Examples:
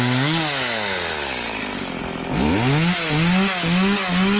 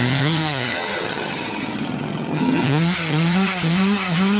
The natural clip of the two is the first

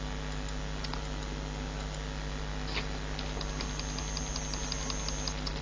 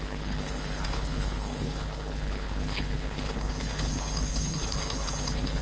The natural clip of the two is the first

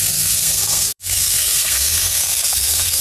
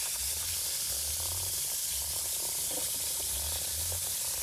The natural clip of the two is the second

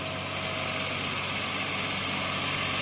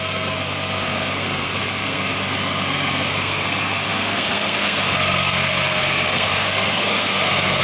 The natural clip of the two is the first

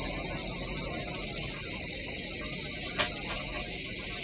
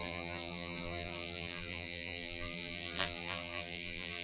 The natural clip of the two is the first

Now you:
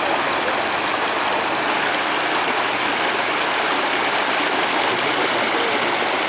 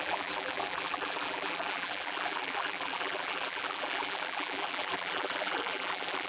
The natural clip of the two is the first